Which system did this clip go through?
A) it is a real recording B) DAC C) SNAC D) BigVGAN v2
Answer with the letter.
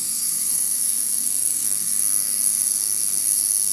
C